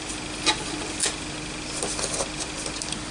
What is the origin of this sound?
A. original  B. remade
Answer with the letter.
A